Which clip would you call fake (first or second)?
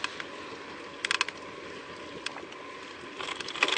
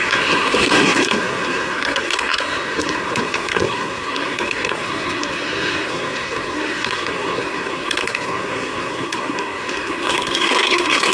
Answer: second